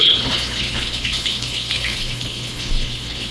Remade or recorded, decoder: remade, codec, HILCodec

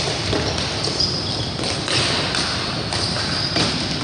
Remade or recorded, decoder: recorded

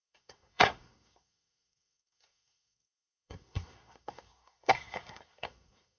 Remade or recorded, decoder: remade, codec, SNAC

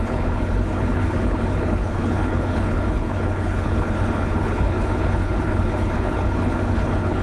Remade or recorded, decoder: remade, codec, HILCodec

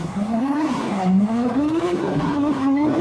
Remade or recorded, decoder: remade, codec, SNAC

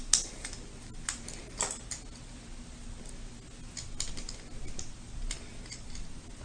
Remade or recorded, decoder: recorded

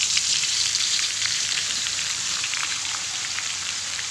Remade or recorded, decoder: remade, vocoder, BigVGAN v2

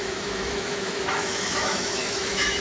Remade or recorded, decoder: remade, autoencoder, DAC-VAE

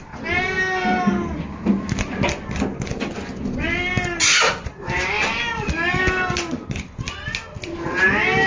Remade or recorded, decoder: recorded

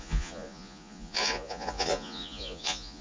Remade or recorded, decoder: remade, vocoder, Vocos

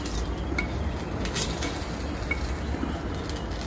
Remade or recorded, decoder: recorded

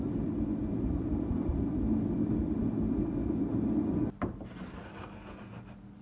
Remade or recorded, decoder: recorded